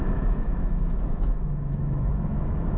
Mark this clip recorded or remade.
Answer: remade